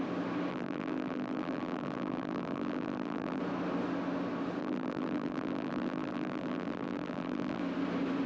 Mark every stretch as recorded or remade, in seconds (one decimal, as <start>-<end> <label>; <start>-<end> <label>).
0.0-0.5 recorded; 0.5-3.4 remade; 3.4-4.6 recorded; 4.6-7.6 remade; 7.6-8.3 recorded